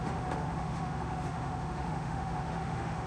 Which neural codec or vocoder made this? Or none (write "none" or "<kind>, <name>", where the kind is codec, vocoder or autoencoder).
autoencoder, DAC-VAE